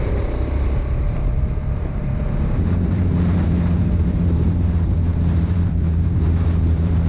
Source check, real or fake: fake